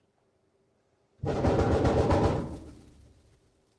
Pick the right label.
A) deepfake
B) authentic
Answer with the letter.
B